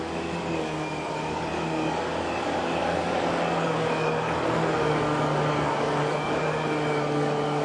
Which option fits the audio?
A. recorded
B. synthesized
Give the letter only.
B